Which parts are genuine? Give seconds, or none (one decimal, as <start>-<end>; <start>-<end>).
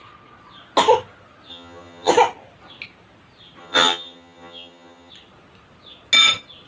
0.0-1.5; 2.1-3.6; 5.1-6.7